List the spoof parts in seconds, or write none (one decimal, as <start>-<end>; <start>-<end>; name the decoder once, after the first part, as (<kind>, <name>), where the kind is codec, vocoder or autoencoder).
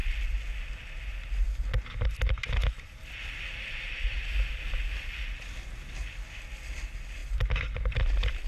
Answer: none